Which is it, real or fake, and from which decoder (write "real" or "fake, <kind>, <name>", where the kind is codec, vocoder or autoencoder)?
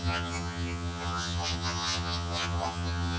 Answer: fake, vocoder, HiFi-GAN